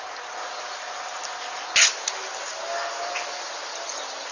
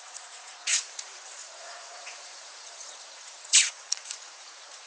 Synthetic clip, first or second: second